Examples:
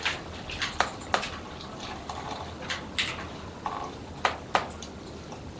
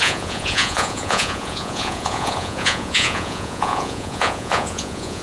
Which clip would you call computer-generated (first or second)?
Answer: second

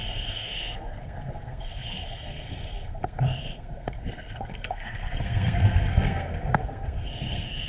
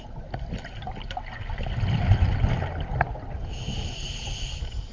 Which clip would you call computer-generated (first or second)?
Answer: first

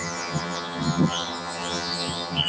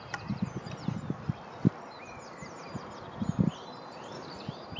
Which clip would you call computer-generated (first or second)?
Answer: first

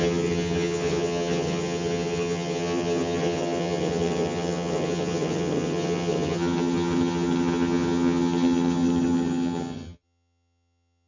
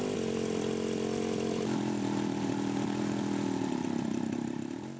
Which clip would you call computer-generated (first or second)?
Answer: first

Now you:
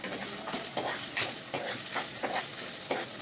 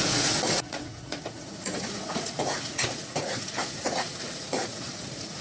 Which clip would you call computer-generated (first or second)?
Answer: second